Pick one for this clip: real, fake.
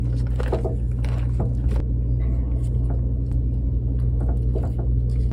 real